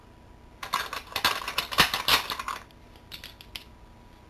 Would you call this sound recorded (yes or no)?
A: yes